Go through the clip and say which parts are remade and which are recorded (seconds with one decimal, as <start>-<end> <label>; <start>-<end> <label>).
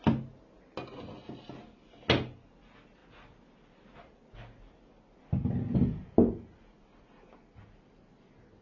0.0-8.6 recorded